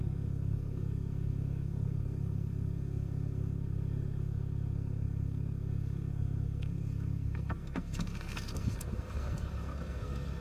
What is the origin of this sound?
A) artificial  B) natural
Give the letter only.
A